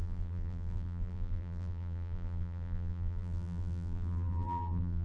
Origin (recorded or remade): remade